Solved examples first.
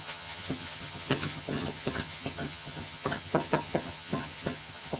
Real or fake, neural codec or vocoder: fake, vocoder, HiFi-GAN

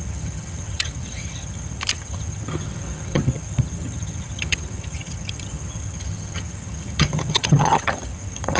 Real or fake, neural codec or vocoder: fake, vocoder, HiFi-GAN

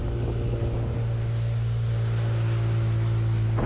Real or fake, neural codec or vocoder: real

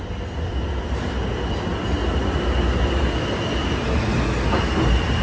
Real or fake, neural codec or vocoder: real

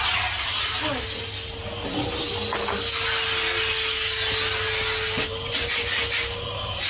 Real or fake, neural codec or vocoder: real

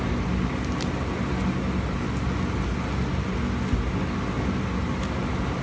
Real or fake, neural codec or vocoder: real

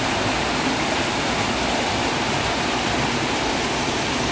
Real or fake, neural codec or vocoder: real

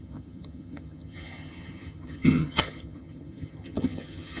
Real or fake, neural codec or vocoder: fake, vocoder, HiFi-GAN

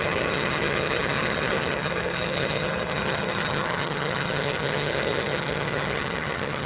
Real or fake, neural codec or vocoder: fake, vocoder, HiFi-GAN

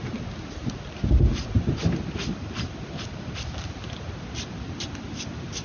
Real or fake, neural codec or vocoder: real